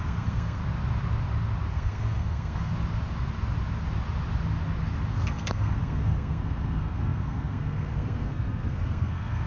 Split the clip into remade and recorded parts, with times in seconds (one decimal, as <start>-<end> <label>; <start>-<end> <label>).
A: 0.0-0.6 remade; 0.6-1.7 recorded; 1.7-2.7 remade; 2.7-5.1 recorded; 5.1-9.5 remade